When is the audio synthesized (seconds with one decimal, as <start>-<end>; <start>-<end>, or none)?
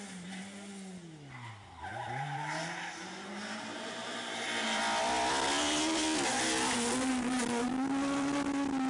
1.9-3.3; 3.7-4.8; 7.1-7.7